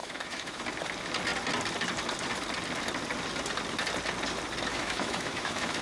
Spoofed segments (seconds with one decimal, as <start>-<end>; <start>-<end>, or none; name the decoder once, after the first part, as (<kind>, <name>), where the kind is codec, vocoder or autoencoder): 0.0-0.6 (autoencoder, DAC-VAE); 4.7-5.8